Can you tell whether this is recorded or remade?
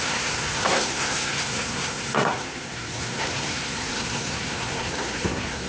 remade